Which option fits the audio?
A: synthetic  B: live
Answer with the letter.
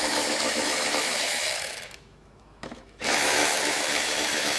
A